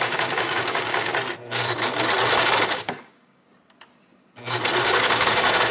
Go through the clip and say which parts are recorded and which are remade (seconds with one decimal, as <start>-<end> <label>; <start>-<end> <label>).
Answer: 0.0-1.1 remade; 1.1-2.4 recorded; 2.4-3.5 remade; 3.5-4.8 recorded; 4.8-5.7 remade